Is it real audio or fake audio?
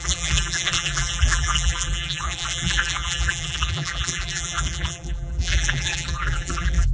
fake